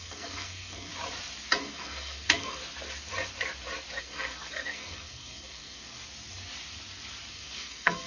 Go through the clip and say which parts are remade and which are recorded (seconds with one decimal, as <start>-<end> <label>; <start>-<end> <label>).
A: 0.0-0.9 remade; 0.9-1.6 recorded; 1.6-2.6 remade; 2.6-4.0 recorded; 4.0-5.9 remade; 5.9-7.3 recorded; 7.3-8.1 remade